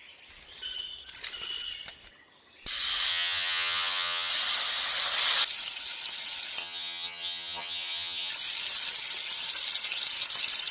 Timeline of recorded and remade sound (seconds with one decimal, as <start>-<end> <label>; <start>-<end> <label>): 0.0-3.1 recorded; 3.1-4.3 remade; 4.3-6.6 recorded; 6.6-8.3 remade; 8.3-10.7 recorded